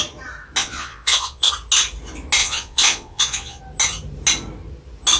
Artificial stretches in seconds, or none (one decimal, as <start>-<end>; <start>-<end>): 0.6-1.5; 2.4-3.6